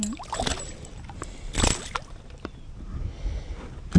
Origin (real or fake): real